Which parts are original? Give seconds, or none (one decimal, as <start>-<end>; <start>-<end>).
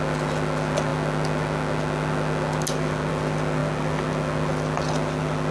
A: 0.0-5.5